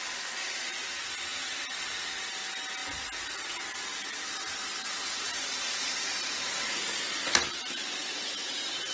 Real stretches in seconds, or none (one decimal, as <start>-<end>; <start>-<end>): 0.0-8.9